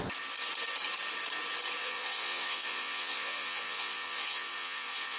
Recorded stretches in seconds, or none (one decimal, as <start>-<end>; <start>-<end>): 0.0-1.8